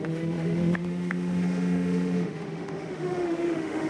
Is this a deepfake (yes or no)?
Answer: yes